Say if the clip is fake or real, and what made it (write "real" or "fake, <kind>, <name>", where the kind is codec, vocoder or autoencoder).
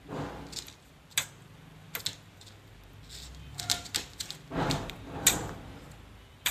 real